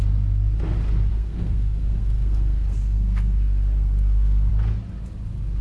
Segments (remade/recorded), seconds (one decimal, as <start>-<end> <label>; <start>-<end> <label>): 0.0-1.1 recorded; 1.1-4.5 remade; 4.5-5.6 recorded